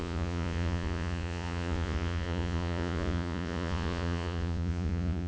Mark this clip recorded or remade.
remade